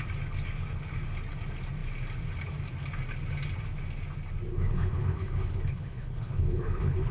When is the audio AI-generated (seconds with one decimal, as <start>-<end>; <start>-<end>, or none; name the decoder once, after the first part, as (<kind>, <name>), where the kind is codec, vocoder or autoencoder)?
4.5-7.1 (codec, HILCodec)